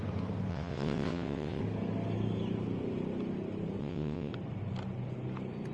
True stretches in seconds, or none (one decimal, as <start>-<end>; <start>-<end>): 0.0-0.5; 1.6-3.8; 4.3-5.7